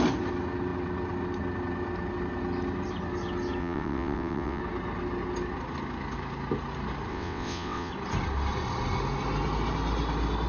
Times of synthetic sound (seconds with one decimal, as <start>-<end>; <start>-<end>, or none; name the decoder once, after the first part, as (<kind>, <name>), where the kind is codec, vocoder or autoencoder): 3.6-4.6 (vocoder, WaveNeXt); 7.1-7.9